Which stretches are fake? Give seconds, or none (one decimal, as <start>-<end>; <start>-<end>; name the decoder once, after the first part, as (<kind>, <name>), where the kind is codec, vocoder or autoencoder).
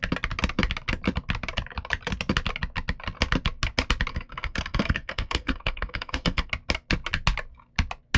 4.1-6.5 (codec, SNAC)